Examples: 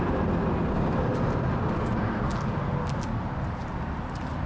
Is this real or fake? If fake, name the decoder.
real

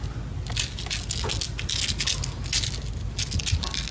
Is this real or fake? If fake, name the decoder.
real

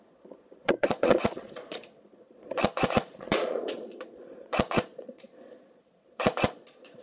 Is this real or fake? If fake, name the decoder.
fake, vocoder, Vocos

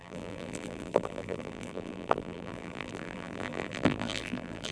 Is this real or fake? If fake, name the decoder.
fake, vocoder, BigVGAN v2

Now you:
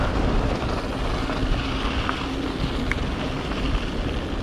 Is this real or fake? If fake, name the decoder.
real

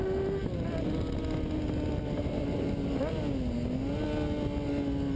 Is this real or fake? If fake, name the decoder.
real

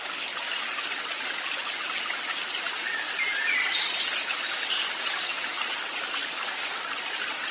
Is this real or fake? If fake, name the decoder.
real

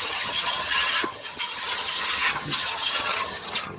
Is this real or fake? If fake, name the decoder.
fake, vocoder, HiFi-GAN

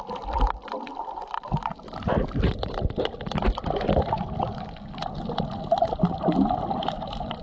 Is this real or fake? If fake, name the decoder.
real